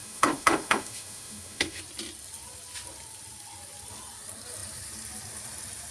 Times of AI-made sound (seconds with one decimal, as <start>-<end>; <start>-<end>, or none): 0.0-1.8